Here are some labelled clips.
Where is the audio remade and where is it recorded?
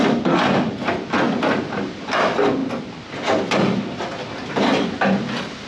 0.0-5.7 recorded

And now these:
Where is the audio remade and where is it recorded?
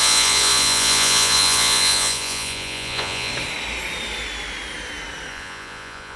0.0-3.3 remade; 3.3-5.3 recorded; 5.3-6.2 remade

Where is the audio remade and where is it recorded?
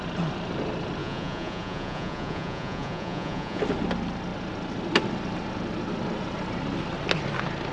0.0-1.0 recorded; 1.0-3.6 remade; 3.6-7.7 recorded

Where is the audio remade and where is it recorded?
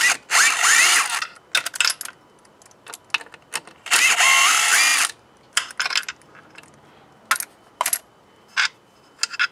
0.0-9.5 recorded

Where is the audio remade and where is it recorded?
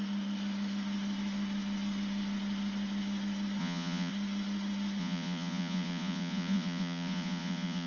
0.0-3.6 recorded; 3.6-4.1 remade; 4.1-5.0 recorded; 5.0-7.9 remade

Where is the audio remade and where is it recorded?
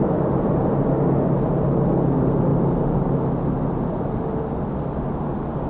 0.0-5.7 recorded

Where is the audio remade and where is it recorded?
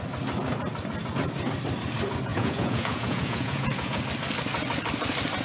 0.0-2.3 recorded; 2.3-4.0 remade; 4.0-5.4 recorded